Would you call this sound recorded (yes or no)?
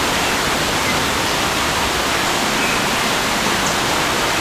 yes